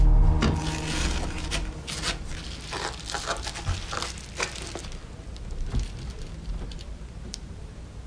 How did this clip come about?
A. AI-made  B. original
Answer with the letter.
B